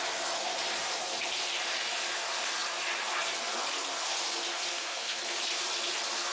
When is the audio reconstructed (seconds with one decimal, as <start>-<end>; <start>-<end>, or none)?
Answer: 4.7-5.2